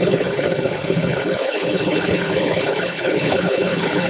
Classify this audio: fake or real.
fake